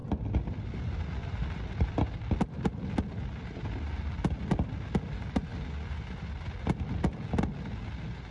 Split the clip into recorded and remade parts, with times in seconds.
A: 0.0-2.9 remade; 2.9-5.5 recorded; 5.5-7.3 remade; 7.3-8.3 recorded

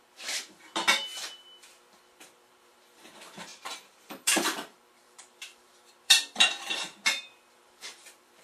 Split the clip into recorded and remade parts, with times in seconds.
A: 0.0-1.0 remade; 1.0-2.1 recorded; 2.1-8.4 remade

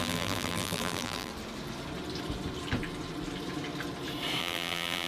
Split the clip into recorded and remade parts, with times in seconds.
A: 0.0-1.3 remade; 1.3-4.4 recorded; 4.4-5.1 remade

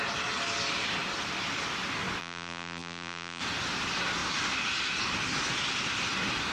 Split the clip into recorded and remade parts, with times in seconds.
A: 0.0-2.2 recorded; 2.2-3.4 remade; 3.4-6.5 recorded

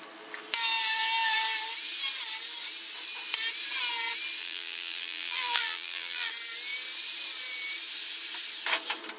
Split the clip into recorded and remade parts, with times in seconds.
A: 0.0-4.4 recorded; 4.4-6.3 remade; 6.3-9.2 recorded

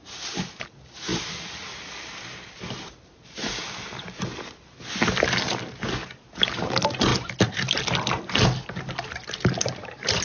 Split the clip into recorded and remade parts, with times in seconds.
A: 0.0-1.1 recorded; 1.1-4.2 remade; 4.2-7.1 recorded; 7.1-7.9 remade; 7.9-10.2 recorded

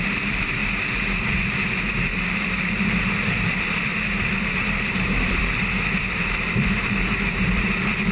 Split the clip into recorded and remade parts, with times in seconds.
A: 0.0-5.4 remade; 5.4-6.0 recorded; 6.0-8.1 remade

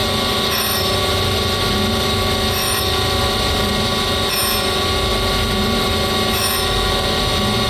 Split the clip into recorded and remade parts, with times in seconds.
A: 0.0-3.7 remade; 3.7-5.1 recorded; 5.1-6.4 remade; 6.4-7.7 recorded